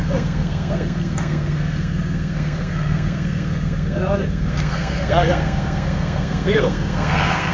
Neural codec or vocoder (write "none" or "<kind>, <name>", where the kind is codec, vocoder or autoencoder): codec, SNAC